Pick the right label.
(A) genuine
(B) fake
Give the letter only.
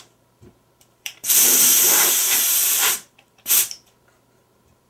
B